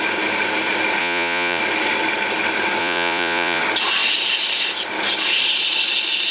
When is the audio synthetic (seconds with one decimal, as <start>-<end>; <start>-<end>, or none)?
1.0-1.6; 2.8-3.6

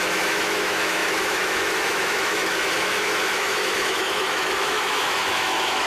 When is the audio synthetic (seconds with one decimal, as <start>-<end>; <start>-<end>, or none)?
0.0-5.9

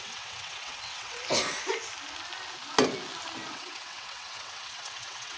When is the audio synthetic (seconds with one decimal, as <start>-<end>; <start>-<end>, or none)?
0.0-1.2; 3.5-5.4

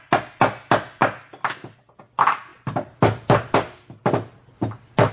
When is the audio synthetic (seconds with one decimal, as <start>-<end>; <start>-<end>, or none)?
none

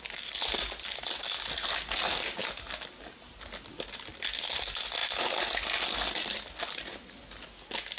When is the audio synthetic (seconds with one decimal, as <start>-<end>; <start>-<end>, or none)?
none